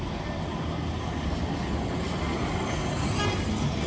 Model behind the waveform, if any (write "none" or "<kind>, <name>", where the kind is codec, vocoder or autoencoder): none